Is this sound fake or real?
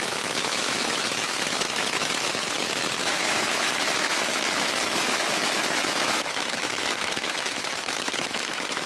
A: fake